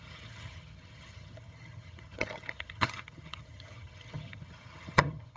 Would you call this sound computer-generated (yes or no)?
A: yes